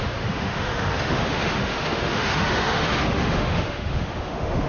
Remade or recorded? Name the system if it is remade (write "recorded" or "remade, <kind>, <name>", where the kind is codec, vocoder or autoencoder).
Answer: remade, autoencoder, DAC-VAE